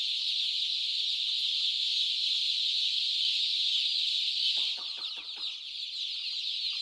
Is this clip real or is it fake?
real